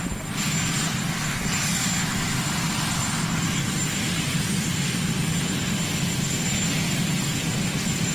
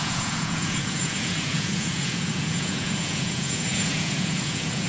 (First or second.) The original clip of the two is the first